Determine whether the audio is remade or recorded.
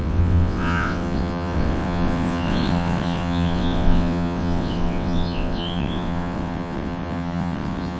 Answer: remade